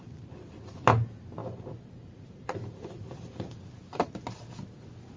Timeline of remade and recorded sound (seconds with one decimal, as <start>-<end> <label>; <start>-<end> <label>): 0.0-1.4 recorded; 1.4-3.6 remade; 3.6-5.2 recorded